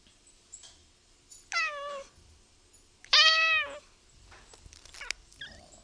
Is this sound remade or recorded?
recorded